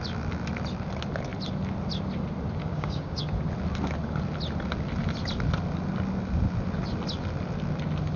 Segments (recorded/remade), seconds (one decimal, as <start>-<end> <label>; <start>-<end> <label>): 0.0-2.6 recorded; 2.6-3.2 remade; 3.2-8.2 recorded